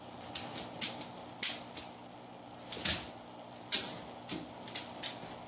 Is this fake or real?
real